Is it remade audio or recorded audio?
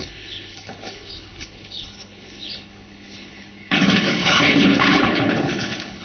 remade